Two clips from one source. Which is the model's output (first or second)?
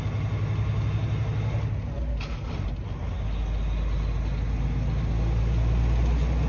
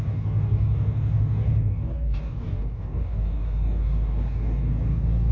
second